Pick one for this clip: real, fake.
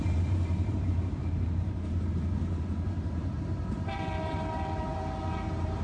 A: fake